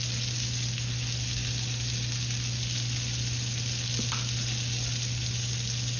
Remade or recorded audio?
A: recorded